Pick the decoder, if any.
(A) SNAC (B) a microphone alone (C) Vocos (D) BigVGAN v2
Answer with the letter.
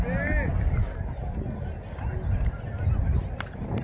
B